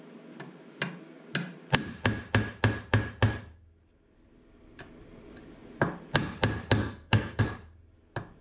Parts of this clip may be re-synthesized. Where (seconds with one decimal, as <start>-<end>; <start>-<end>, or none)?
6.8-7.4